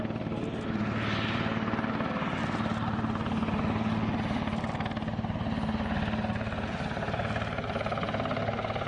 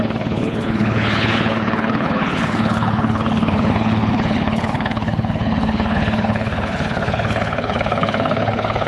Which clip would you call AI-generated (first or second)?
second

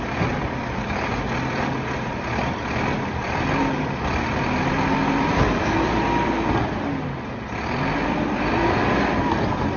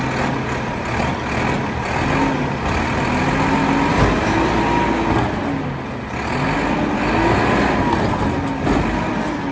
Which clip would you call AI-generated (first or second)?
first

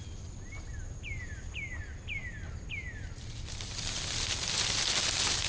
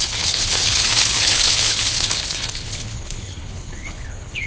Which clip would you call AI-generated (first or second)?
second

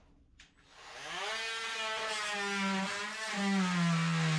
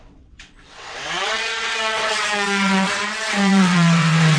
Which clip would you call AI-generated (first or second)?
second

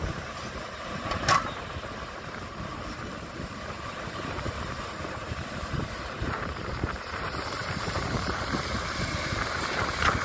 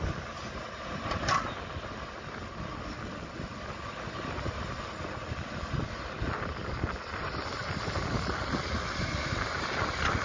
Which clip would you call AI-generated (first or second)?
first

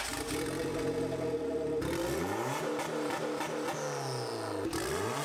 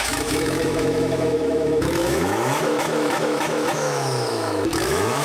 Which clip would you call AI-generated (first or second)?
second